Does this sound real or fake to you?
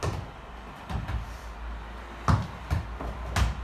real